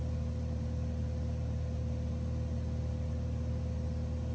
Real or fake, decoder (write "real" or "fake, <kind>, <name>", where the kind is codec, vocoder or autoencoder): real